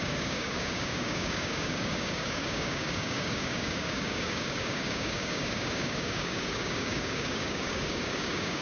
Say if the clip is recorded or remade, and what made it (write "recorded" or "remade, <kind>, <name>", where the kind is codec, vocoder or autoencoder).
remade, codec, DAC